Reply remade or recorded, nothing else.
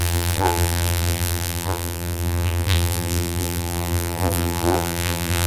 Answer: remade